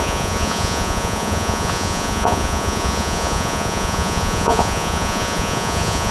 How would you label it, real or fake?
fake